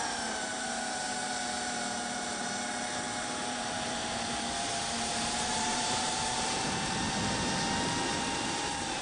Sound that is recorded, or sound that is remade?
remade